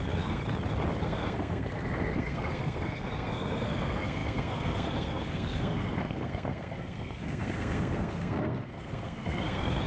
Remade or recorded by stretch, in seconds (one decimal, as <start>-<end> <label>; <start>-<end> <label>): 0.0-0.4 remade; 0.4-1.0 recorded; 1.0-9.9 remade